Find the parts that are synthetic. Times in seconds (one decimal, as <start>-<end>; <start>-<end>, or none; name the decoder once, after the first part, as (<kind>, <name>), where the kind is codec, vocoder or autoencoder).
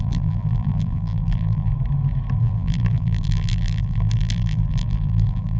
0.0-1.7 (vocoder, BigVGAN v2); 2.4-5.6